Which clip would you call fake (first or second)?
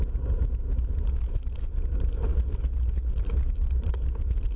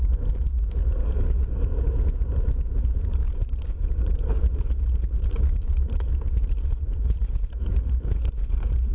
second